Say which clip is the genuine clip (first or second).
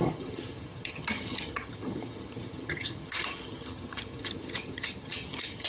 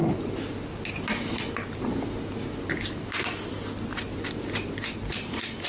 second